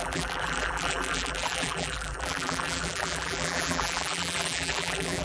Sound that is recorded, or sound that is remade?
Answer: remade